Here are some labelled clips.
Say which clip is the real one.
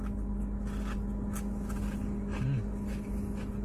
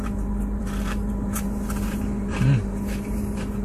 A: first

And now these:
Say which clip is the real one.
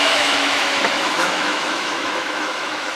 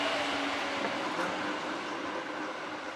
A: second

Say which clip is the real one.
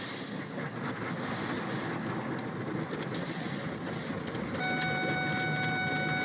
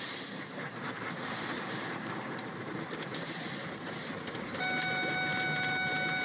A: first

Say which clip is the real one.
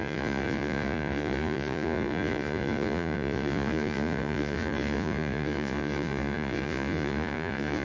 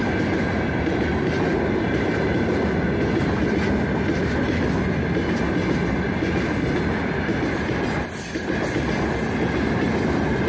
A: second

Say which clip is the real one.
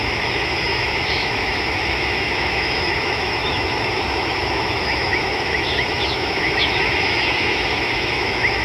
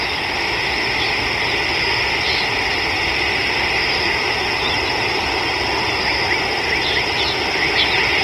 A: second